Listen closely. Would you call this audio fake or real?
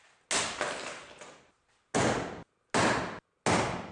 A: real